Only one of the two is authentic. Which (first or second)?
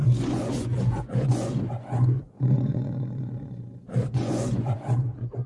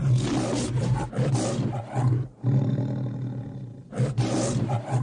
second